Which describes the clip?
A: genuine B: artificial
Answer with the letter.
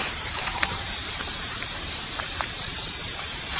B